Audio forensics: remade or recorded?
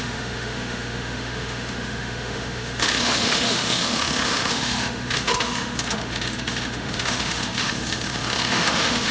remade